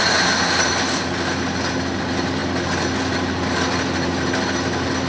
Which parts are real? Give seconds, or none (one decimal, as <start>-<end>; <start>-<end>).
0.0-5.1